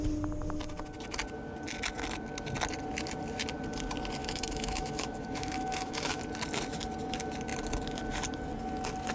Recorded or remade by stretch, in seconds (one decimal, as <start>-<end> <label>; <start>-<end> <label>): 0.0-4.2 recorded; 4.2-6.2 remade; 6.2-9.1 recorded

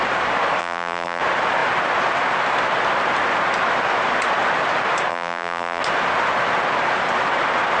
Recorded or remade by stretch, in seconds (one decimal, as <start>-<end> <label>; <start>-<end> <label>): 0.0-0.6 recorded; 0.6-1.2 remade; 1.2-5.1 recorded; 5.1-5.8 remade; 5.8-7.8 recorded